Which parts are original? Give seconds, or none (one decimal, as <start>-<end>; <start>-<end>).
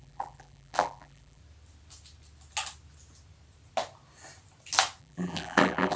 1.4-5.0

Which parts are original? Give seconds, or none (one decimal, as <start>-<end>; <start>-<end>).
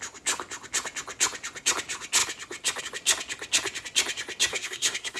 0.0-4.5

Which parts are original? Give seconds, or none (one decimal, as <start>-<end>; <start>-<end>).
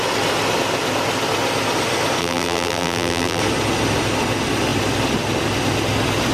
0.0-2.2; 3.4-6.3